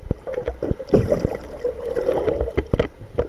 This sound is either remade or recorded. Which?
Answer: recorded